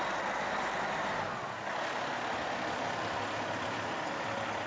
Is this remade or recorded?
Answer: recorded